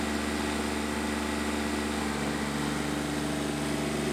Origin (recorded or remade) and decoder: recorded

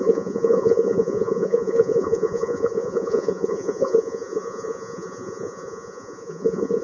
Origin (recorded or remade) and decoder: remade, vocoder, Vocos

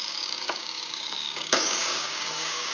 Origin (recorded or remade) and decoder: remade, codec, DAC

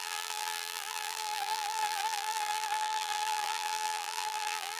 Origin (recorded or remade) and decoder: remade, vocoder, BigVGAN v2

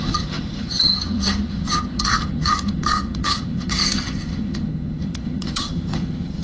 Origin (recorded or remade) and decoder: remade, vocoder, HiFi-GAN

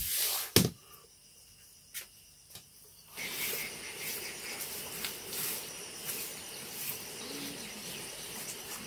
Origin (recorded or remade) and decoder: recorded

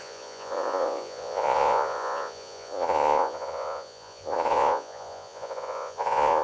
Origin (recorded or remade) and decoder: remade, vocoder, Vocos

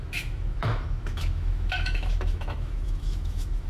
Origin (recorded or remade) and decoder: remade, autoencoder, DAC-VAE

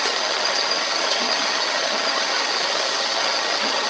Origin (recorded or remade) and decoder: remade, vocoder, HiFi-GAN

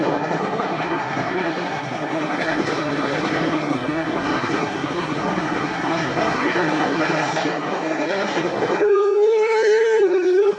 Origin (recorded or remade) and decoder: remade, codec, SNAC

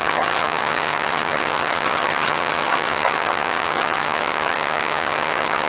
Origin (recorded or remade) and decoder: remade, vocoder, HiFi-GAN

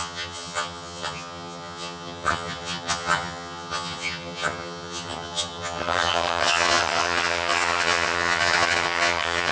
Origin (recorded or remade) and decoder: remade, vocoder, HiFi-GAN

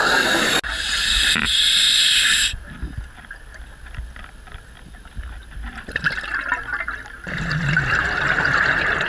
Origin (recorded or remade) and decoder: recorded